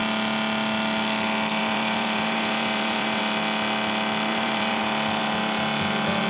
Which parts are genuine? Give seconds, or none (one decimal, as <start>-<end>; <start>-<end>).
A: 0.0-1.6; 3.2-4.3; 4.8-6.3